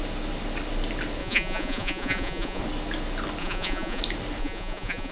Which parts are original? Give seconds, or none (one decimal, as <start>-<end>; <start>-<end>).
0.0-1.2; 2.6-3.4; 4.0-4.4

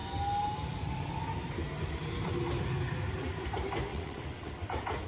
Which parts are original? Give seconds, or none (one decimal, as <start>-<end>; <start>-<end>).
0.0-3.9; 4.5-5.1

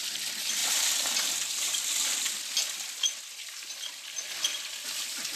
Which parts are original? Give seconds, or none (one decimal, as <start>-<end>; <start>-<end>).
0.0-5.4

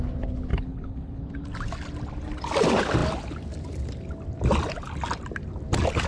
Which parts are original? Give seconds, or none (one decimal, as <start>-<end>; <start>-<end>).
0.0-0.5; 1.2-6.1

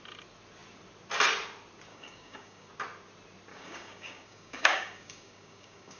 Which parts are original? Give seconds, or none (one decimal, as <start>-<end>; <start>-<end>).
0.0-1.9; 2.7-3.5